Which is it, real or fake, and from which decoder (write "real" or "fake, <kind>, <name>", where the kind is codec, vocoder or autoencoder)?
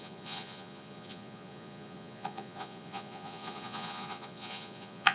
fake, vocoder, Vocos